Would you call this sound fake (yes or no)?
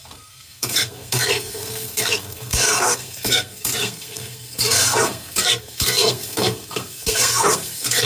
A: yes